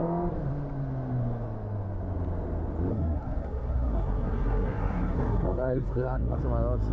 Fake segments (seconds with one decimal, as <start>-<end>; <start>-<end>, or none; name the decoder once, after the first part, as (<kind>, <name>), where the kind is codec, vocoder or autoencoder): 2.9-6.4 (codec, SNAC)